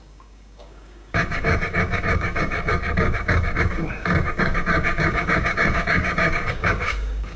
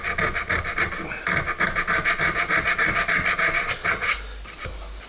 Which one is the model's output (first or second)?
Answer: first